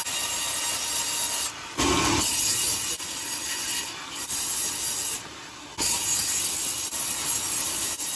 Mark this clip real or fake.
real